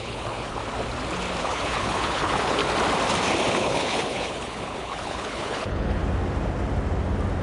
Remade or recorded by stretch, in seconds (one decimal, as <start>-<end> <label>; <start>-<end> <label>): 0.0-0.6 remade; 0.6-1.4 recorded; 1.4-2.6 remade; 2.6-3.5 recorded; 3.5-6.0 remade; 6.0-7.4 recorded

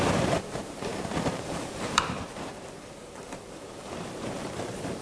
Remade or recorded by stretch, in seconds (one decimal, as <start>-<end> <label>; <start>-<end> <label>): 0.0-5.0 remade

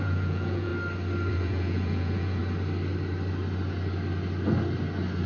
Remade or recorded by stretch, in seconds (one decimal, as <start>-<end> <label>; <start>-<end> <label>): 0.0-0.7 remade; 0.7-1.3 recorded; 1.3-2.4 remade; 2.4-5.3 recorded

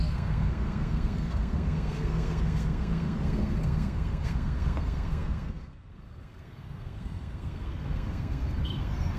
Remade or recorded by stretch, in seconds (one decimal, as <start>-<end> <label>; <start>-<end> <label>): 0.0-9.2 remade

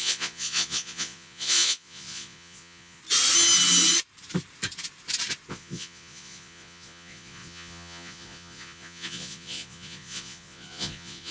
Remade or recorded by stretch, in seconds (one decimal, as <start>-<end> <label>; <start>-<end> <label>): 0.0-3.0 remade; 3.0-5.5 recorded; 5.5-11.3 remade

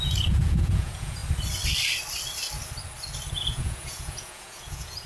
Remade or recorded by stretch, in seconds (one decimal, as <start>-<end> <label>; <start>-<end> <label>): 0.0-1.2 remade; 1.2-3.3 recorded; 3.3-5.1 remade